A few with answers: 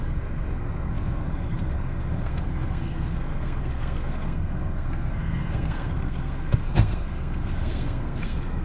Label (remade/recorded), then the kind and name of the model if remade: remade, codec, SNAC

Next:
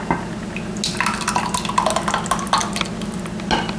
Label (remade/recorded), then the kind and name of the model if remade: recorded